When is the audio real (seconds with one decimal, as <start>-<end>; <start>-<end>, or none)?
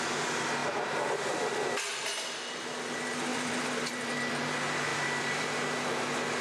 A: 0.0-3.3; 4.5-4.9; 5.6-6.4